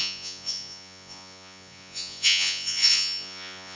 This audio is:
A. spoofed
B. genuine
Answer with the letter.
A